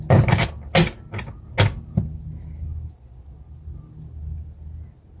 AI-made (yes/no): no